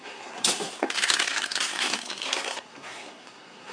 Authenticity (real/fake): fake